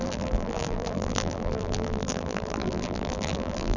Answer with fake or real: fake